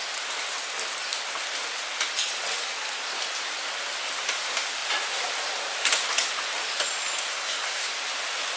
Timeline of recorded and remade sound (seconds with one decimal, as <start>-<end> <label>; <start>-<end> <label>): 0.0-7.3 recorded; 7.3-7.9 remade; 7.9-8.6 recorded